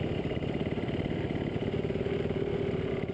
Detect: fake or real real